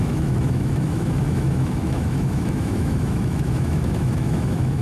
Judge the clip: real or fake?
fake